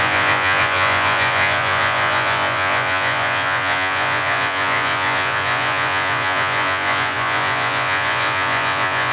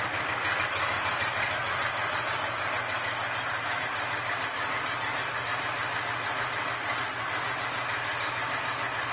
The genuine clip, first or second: second